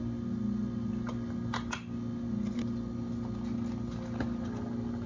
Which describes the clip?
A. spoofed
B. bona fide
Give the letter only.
B